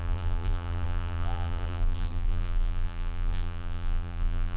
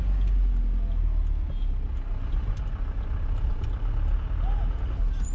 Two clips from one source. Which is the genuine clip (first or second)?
second